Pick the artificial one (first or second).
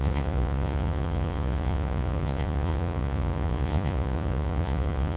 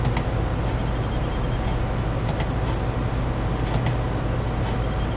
first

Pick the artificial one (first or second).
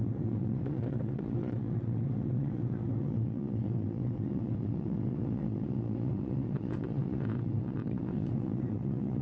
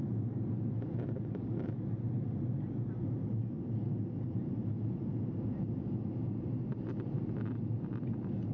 first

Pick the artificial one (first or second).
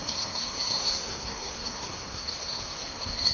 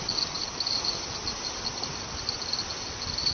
first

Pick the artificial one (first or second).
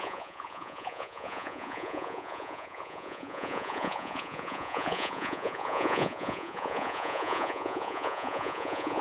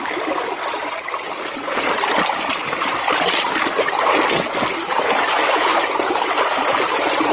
first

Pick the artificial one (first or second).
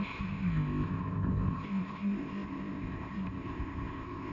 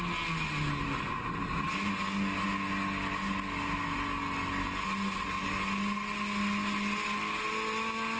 first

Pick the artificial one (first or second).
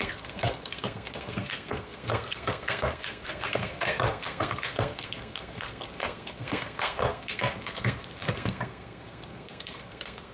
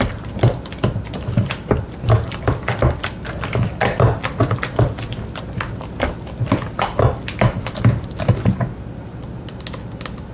first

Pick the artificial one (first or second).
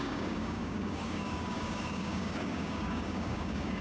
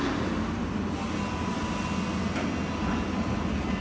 first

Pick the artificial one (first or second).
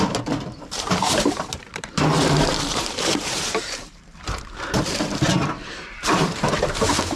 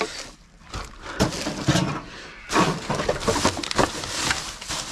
first